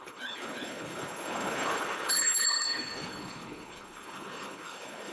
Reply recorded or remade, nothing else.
remade